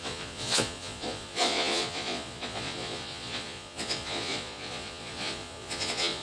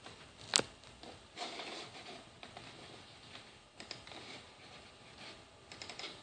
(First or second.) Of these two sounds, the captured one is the second